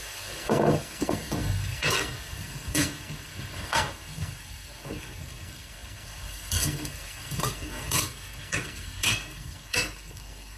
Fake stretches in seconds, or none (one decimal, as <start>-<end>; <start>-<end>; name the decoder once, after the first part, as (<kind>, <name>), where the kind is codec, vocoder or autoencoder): 0.0-10.6 (codec, SNAC)